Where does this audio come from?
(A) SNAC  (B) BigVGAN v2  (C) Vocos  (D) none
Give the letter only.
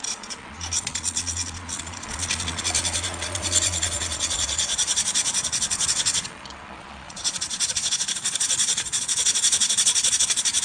C